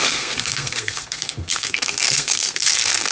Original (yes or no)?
no